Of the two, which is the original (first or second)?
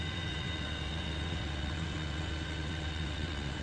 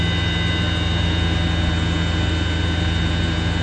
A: second